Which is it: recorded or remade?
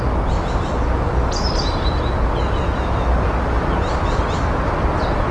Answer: recorded